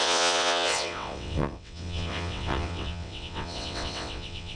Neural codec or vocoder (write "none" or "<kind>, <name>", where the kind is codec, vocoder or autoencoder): vocoder, WaveNeXt